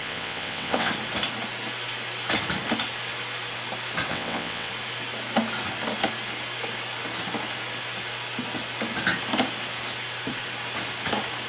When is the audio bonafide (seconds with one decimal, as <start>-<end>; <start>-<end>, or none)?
0.9-4.1; 4.7-11.5